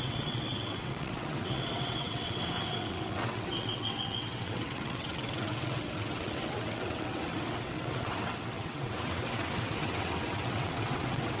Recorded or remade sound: remade